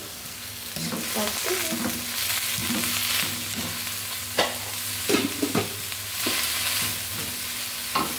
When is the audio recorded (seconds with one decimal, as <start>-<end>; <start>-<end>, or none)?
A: 0.7-8.2